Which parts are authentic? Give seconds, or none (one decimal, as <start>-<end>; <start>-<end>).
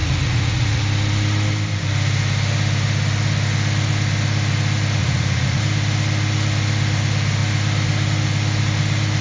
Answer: 0.8-5.0; 5.6-9.2